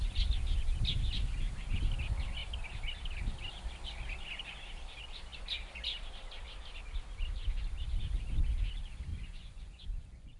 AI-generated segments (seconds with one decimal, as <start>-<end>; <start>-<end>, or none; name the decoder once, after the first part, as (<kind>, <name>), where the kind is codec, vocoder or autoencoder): 9.1-10.4 (vocoder, Vocos)